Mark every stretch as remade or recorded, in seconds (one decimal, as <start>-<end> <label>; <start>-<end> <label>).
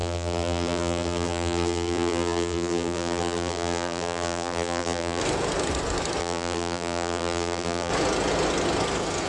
0.0-5.2 remade; 5.2-6.2 recorded; 6.2-7.9 remade; 7.9-9.3 recorded